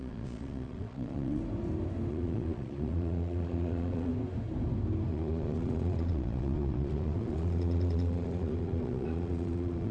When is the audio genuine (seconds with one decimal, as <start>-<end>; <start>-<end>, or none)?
1.4-2.1; 4.1-5.1